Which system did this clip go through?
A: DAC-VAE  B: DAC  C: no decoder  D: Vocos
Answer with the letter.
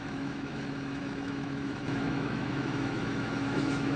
A